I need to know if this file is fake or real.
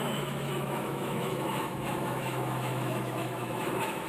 fake